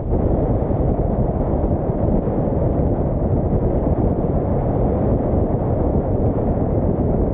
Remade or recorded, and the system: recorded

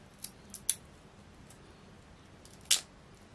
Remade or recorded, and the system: recorded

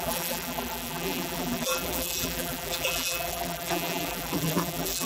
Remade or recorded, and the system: remade, vocoder, BigVGAN v2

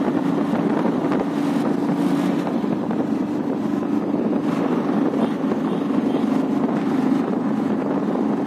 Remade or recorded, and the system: recorded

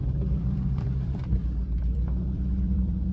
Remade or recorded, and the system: remade, vocoder, BigVGAN v2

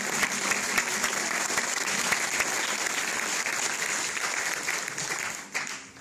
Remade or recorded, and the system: recorded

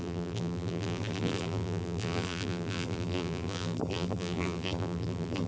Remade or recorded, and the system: remade, vocoder, BigVGAN v2